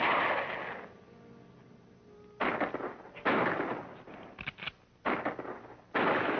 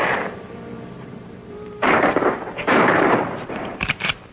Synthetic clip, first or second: second